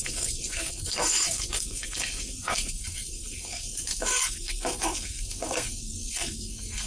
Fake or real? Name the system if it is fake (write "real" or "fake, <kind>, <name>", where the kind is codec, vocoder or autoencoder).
fake, codec, SNAC